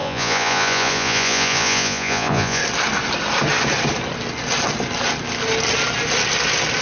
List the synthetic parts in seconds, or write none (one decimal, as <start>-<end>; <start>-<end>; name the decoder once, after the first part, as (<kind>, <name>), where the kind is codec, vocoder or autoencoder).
0.0-2.6 (vocoder, Vocos)